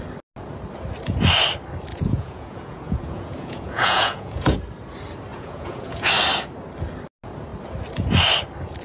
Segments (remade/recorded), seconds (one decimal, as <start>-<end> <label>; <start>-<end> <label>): 0.0-1.9 recorded; 1.9-4.6 remade; 4.6-5.3 recorded; 5.3-6.1 remade; 6.1-8.8 recorded